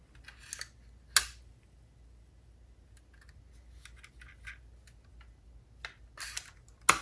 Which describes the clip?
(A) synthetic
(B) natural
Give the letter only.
B